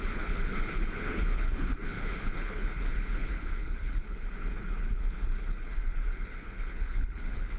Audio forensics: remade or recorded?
remade